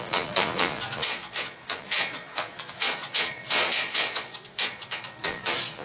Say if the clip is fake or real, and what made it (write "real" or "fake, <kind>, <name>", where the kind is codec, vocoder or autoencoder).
fake, vocoder, Vocos